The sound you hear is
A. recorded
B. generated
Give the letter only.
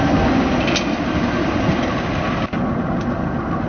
A